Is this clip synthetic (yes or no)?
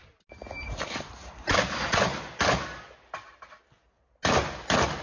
no